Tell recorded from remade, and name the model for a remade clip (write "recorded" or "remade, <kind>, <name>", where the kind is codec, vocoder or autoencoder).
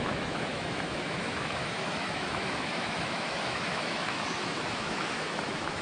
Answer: remade, autoencoder, DAC-VAE